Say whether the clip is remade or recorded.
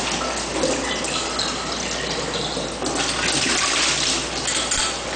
recorded